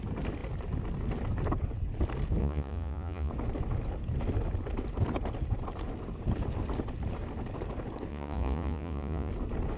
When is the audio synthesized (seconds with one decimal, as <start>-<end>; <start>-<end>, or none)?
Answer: 2.4-3.3; 8.1-9.3